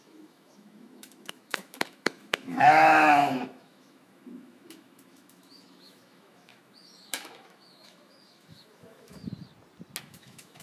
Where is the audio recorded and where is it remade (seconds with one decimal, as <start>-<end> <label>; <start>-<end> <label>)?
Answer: 0.0-9.2 remade; 9.2-10.0 recorded; 10.0-10.6 remade